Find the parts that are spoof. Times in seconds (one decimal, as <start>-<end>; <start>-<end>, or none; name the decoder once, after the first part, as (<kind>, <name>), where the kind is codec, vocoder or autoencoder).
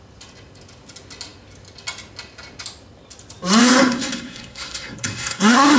3.6-5.8 (codec, SNAC)